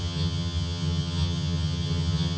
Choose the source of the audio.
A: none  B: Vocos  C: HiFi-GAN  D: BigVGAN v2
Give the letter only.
C